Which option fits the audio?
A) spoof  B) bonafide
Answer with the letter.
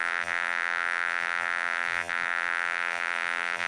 A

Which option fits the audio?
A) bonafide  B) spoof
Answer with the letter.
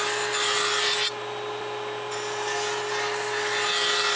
A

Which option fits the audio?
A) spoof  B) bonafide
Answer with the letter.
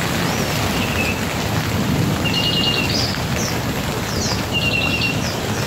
B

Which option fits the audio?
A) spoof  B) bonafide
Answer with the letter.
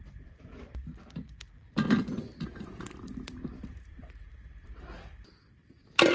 A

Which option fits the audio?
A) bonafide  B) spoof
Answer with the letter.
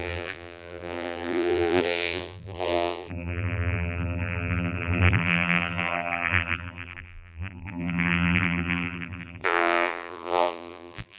B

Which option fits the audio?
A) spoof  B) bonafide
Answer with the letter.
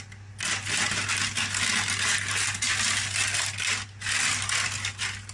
B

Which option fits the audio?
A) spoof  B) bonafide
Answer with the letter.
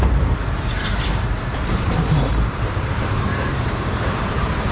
A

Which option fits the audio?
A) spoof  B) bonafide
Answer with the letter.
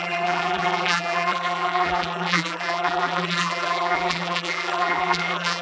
A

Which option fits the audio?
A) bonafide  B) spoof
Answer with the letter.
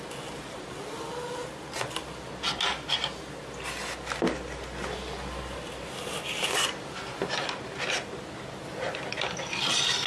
A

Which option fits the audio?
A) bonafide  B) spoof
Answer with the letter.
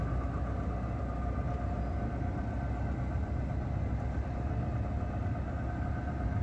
A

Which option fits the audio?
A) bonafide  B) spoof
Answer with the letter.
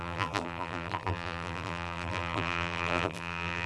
B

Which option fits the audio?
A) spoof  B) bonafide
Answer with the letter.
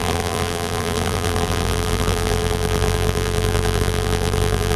A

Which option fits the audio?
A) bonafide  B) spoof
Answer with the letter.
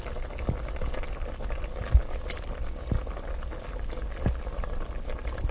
A